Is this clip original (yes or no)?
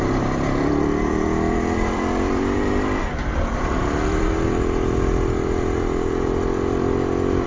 no